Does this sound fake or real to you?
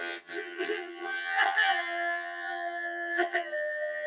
fake